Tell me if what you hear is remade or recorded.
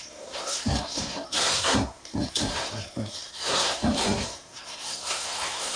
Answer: remade